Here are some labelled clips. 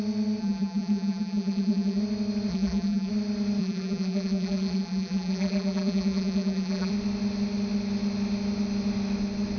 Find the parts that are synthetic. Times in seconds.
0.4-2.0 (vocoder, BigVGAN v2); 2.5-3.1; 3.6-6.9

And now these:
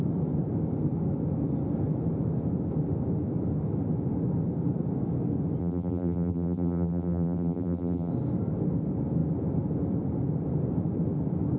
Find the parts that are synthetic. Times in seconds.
5.6-8.1 (vocoder, BigVGAN v2)

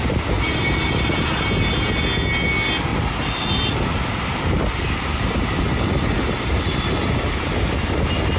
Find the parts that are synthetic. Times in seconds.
none

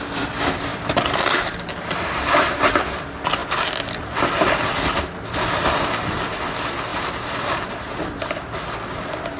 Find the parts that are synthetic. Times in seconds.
0.7-2.7 (vocoder, BigVGAN v2); 6.9-8.5